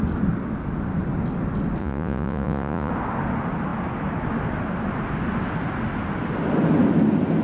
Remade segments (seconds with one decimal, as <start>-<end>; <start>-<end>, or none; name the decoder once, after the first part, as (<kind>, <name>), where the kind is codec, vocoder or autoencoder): 1.8-2.9 (vocoder, Vocos)